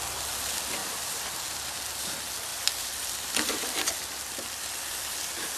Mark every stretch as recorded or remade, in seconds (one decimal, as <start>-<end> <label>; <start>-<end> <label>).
0.0-0.8 recorded; 0.8-1.3 remade; 1.3-2.5 recorded; 2.5-4.0 remade; 4.0-5.6 recorded